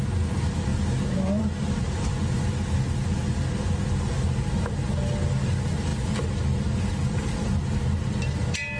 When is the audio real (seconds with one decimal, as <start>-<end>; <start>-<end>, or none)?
0.0-8.8